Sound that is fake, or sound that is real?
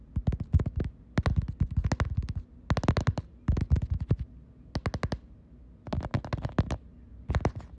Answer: real